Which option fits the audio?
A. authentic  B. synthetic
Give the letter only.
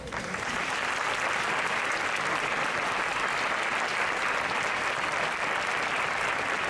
B